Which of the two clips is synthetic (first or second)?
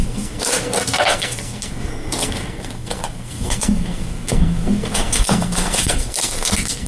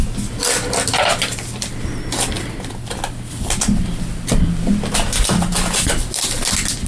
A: first